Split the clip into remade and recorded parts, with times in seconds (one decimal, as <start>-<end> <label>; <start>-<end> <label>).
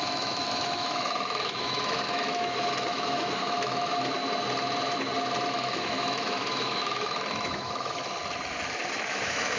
0.0-4.2 remade; 4.2-5.5 recorded; 5.5-8.0 remade; 8.0-9.1 recorded; 9.1-9.6 remade